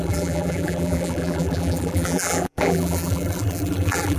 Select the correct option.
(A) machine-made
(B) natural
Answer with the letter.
A